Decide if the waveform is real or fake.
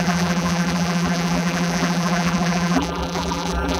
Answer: fake